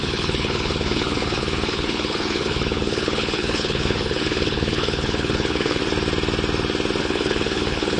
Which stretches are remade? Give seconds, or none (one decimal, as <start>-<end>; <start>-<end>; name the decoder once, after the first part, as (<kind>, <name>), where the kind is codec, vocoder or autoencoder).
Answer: 0.0-5.8 (codec, HILCodec); 7.0-8.0